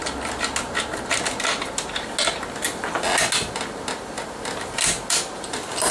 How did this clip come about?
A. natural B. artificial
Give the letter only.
A